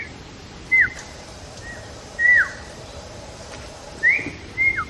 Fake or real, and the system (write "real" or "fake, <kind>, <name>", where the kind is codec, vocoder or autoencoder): real